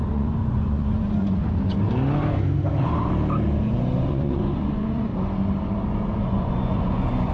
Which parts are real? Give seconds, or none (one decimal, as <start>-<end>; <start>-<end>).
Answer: 1.4-4.1; 5.1-6.2